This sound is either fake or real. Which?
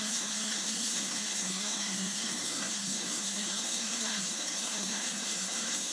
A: fake